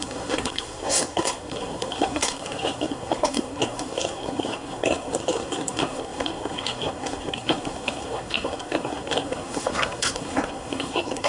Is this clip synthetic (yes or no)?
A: yes